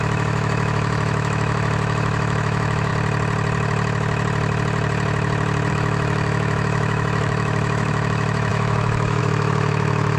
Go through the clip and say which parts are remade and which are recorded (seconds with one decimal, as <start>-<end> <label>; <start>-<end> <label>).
0.0-2.9 remade; 2.9-5.7 recorded; 5.7-10.2 remade